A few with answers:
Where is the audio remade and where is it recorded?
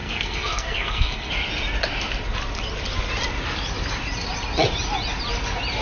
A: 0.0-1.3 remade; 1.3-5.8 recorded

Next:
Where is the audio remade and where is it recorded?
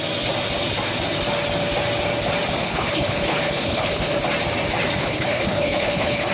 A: 0.0-2.6 recorded; 2.6-4.1 remade; 4.1-5.0 recorded; 5.0-6.3 remade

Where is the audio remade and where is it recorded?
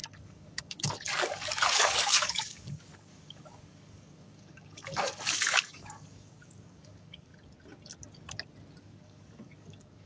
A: 0.0-7.3 remade; 7.3-8.8 recorded; 8.8-10.1 remade